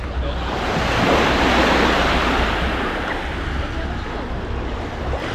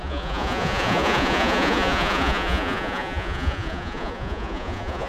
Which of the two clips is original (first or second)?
first